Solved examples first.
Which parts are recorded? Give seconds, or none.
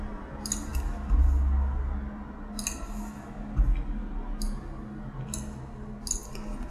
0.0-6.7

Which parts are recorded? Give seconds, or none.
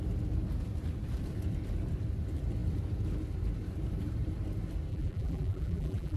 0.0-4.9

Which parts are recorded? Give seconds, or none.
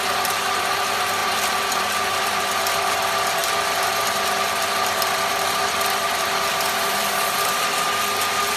0.0-1.2; 2.8-3.4; 7.7-8.6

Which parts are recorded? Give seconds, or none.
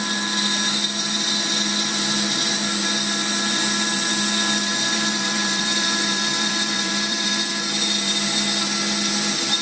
0.0-4.7; 7.5-9.6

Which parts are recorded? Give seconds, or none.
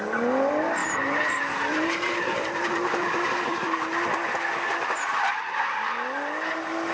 0.0-0.8; 4.7-6.9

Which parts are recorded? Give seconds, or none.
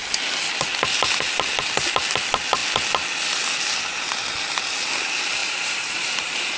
0.0-5.4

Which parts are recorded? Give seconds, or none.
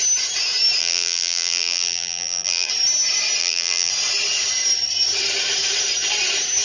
0.0-0.8; 2.7-3.4; 3.9-6.6